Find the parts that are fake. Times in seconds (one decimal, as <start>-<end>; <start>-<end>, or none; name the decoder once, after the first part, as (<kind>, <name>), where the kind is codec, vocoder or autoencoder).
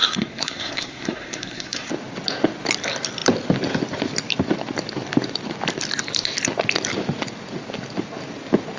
0.0-1.9 (codec, SNAC)